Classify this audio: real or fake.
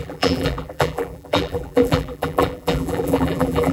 fake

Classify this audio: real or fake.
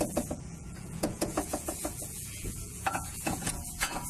fake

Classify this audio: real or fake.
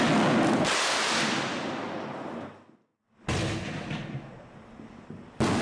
real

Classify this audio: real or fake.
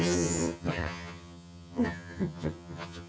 fake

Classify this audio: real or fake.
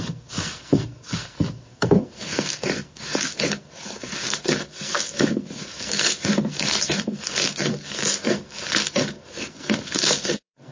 fake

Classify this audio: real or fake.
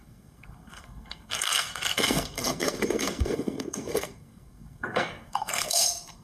fake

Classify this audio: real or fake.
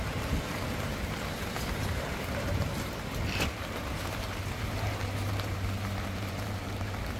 fake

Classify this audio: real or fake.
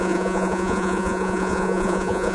fake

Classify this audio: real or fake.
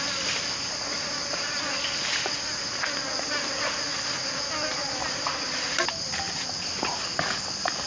real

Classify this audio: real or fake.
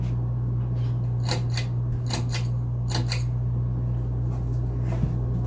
real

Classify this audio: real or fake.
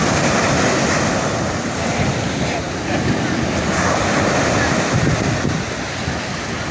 real